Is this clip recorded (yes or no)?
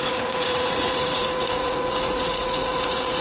no